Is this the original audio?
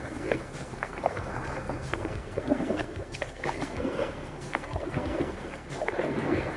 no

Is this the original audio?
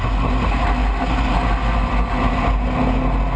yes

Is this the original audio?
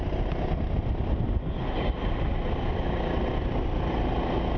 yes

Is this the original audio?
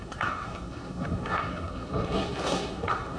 no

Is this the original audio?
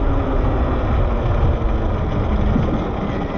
yes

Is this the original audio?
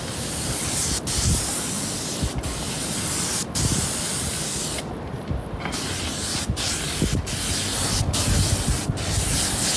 yes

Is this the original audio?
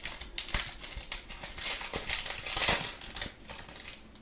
yes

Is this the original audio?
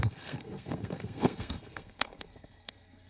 no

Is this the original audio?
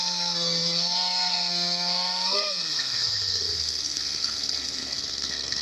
no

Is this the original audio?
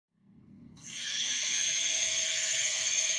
no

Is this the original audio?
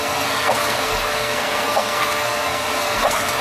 no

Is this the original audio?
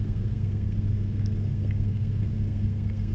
no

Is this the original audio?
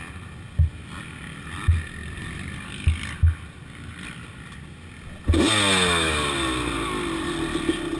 yes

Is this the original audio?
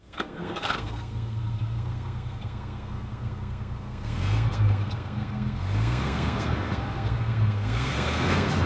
no